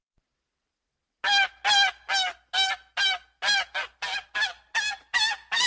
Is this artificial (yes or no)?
no